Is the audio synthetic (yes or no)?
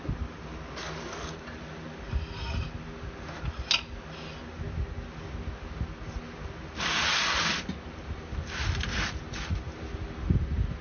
no